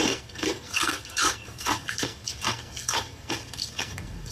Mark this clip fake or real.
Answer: fake